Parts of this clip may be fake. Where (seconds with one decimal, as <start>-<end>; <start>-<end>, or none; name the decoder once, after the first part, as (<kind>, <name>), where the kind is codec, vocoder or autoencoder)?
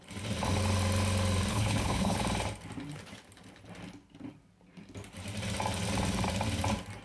1.5-2.2 (codec, HILCodec)